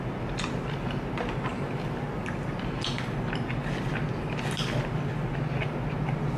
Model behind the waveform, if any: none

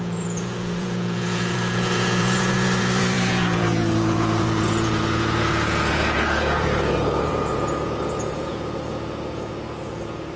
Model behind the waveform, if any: vocoder, Vocos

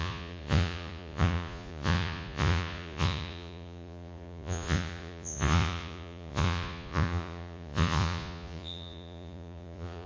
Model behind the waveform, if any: vocoder, Vocos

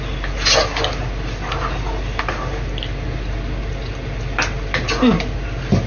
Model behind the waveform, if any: none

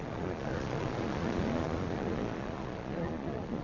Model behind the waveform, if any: vocoder, Vocos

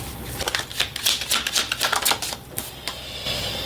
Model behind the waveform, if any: none